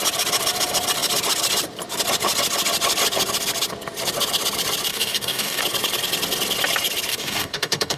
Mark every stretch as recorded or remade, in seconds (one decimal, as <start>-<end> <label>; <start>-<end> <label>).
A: 0.0-4.9 recorded; 4.9-5.6 remade; 5.6-7.1 recorded; 7.1-8.0 remade

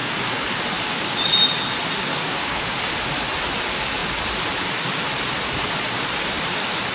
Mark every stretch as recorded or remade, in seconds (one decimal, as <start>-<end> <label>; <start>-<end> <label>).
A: 0.0-0.5 remade; 0.5-2.1 recorded; 2.1-2.8 remade; 2.8-6.9 recorded

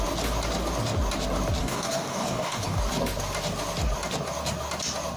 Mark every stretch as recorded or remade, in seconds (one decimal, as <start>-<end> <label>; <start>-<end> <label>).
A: 0.0-1.6 recorded; 1.6-2.8 remade; 2.8-5.2 recorded

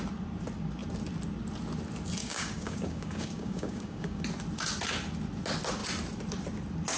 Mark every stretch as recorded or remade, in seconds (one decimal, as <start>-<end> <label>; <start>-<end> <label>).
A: 0.0-2.2 recorded; 2.2-4.2 remade; 4.2-7.0 recorded